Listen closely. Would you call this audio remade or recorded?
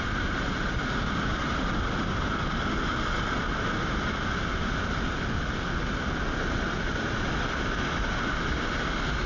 recorded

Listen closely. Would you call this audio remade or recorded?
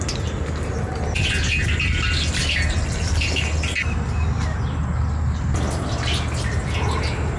recorded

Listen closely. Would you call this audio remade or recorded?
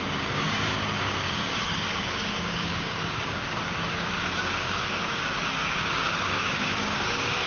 remade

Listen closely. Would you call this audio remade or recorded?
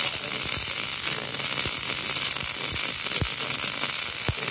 recorded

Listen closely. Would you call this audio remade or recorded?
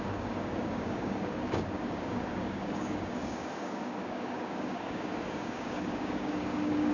remade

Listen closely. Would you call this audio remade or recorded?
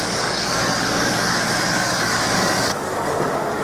remade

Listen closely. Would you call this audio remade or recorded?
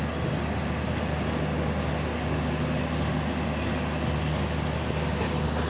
recorded